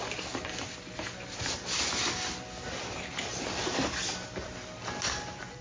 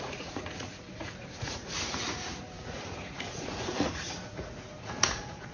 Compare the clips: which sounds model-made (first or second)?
second